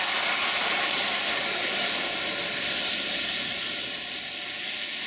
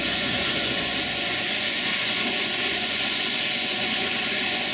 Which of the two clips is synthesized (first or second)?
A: second